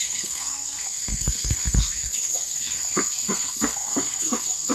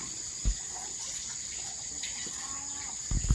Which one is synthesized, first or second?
first